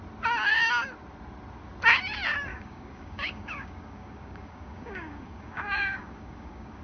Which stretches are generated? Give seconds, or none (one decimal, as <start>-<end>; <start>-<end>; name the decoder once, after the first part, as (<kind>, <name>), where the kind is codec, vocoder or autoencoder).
2.5-6.8 (codec, DAC)